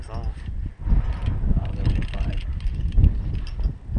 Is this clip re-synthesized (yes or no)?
no